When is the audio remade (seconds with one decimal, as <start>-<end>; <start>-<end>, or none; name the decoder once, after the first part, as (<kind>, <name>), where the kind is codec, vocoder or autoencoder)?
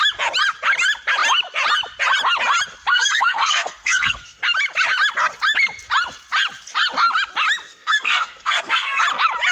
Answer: 2.9-4.4 (codec, SNAC); 7.7-9.0